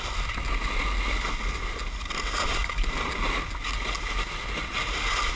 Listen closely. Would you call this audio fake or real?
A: real